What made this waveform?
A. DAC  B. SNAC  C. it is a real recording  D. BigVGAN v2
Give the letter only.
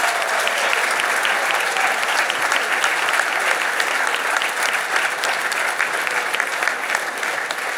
C